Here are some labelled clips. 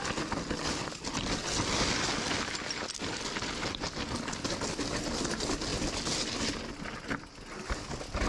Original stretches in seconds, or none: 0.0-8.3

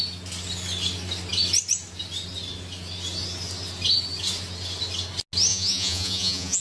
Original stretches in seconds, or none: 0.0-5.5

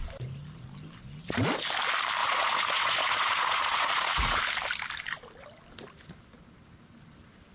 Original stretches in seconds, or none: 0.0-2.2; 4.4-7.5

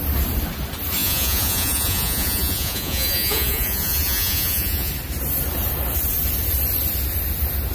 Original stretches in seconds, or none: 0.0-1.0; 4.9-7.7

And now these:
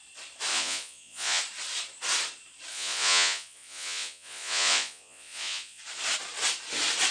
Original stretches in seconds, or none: 0.0-0.5; 1.4-2.7; 5.8-7.1

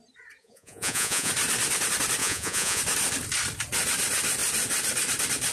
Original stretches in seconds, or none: 0.0-0.4; 1.3-2.2; 2.8-5.5

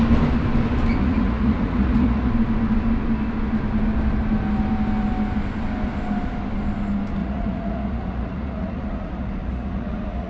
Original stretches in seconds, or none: 0.0-1.0; 2.3-7.2